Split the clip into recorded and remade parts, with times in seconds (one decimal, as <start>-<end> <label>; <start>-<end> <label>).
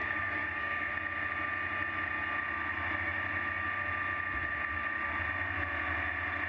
0.0-0.9 remade; 0.9-6.5 recorded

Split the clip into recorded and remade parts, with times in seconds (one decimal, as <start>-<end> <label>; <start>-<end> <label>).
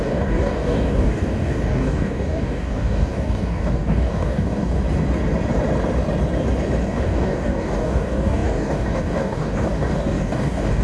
0.0-4.8 remade; 4.8-6.8 recorded; 6.8-10.8 remade